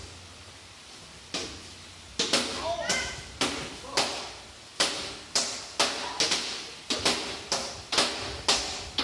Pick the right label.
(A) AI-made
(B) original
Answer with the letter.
B